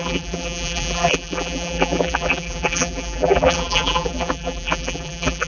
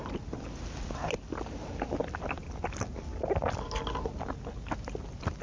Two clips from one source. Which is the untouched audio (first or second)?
second